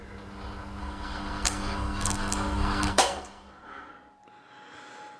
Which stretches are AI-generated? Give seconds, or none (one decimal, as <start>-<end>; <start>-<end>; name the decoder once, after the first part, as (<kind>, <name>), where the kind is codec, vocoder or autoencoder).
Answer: 0.8-3.9 (codec, SNAC)